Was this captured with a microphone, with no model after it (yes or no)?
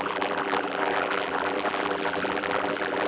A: no